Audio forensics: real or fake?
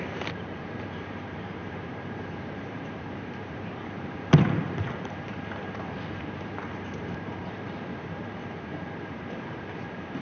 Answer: fake